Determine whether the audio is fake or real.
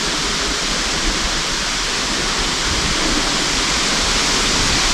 real